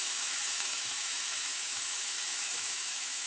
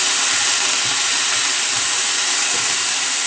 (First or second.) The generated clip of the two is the first